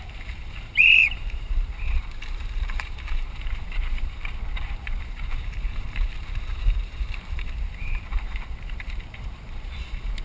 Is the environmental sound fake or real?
fake